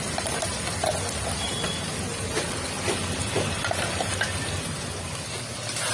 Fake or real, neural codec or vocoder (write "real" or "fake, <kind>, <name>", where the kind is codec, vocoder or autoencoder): real